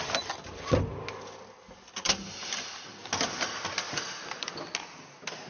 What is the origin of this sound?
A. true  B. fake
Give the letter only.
A